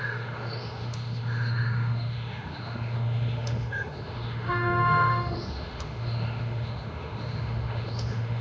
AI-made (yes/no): yes